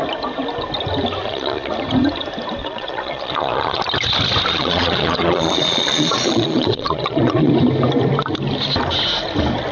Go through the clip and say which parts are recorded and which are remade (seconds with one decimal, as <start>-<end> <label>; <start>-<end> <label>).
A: 0.0-1.2 recorded; 1.2-1.7 remade; 1.7-2.6 recorded; 2.6-3.8 remade; 3.8-4.5 recorded; 4.5-7.5 remade; 7.5-9.7 recorded